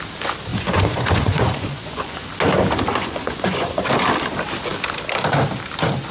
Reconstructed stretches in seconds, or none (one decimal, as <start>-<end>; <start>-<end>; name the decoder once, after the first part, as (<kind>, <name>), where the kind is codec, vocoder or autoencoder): 0.5-2.3 (vocoder, Vocos); 2.9-3.8